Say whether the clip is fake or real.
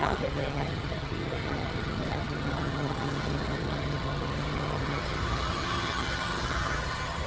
fake